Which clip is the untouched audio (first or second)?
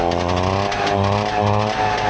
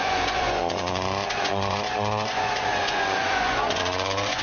first